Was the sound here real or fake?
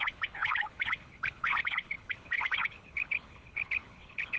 fake